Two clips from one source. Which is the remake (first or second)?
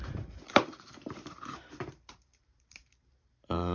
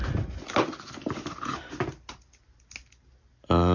first